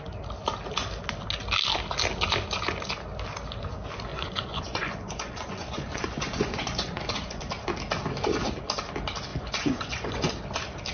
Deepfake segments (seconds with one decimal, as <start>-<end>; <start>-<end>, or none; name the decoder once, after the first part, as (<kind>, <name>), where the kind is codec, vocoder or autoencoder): 4.1-7.4 (vocoder, Vocos); 9.3-10.3